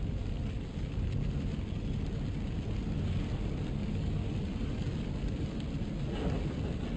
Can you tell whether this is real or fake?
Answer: real